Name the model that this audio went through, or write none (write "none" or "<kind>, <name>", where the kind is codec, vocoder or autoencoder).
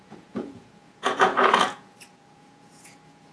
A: vocoder, Vocos